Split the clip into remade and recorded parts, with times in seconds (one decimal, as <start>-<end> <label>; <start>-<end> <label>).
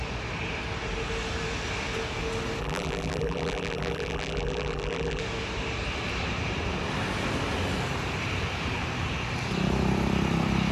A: 0.0-2.6 recorded; 2.6-5.2 remade; 5.2-10.7 recorded